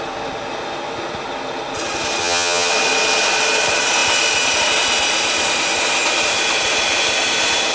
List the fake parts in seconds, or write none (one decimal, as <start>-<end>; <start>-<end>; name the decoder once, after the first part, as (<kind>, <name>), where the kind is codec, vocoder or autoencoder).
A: 2.2-2.7 (vocoder, HiFi-GAN)